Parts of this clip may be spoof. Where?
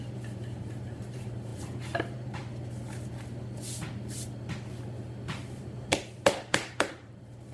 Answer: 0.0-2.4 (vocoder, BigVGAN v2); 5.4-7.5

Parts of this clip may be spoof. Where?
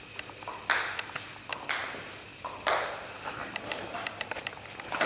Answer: 1.8-5.1 (vocoder, BigVGAN v2)